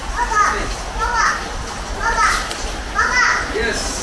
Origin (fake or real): real